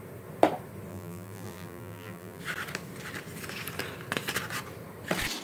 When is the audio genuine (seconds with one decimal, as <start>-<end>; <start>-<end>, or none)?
0.0-0.9; 2.4-5.4